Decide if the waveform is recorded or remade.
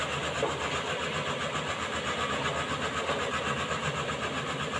recorded